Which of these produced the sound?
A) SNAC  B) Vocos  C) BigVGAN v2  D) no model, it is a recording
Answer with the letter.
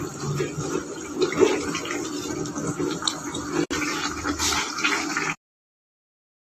D